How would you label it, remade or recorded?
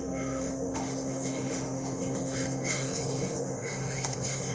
remade